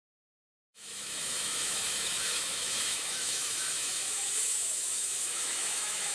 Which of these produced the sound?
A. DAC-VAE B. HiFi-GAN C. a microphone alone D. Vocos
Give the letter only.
A